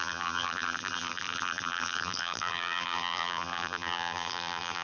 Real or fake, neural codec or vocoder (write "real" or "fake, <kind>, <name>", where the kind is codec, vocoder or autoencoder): fake, vocoder, BigVGAN v2